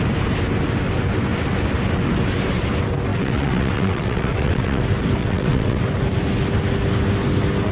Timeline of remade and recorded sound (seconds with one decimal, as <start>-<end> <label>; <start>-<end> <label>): 0.0-3.1 recorded; 3.1-4.8 remade; 4.8-5.2 recorded; 5.2-5.8 remade; 5.8-7.7 recorded